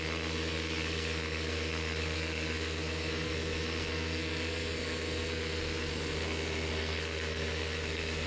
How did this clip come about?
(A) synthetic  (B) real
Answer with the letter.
A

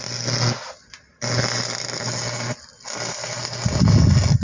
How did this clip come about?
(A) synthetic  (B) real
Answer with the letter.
B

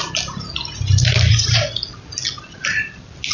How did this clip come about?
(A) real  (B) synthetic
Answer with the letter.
A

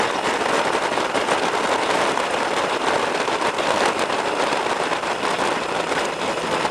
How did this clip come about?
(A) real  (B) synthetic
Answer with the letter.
A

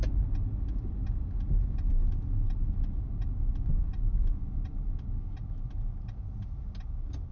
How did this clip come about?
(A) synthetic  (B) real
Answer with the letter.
B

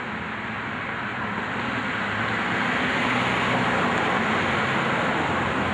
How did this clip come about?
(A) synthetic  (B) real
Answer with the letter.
B